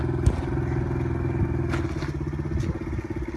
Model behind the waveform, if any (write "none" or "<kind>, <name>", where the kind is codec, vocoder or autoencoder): none